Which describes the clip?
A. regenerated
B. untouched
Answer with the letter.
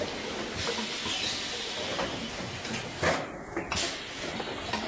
B